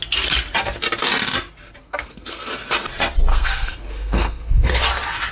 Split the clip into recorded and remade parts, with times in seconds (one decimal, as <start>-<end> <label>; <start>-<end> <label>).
0.0-1.8 recorded; 1.8-2.5 remade; 2.5-3.3 recorded; 3.3-4.8 remade; 4.8-5.3 recorded